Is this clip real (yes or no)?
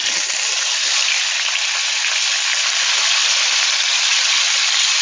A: yes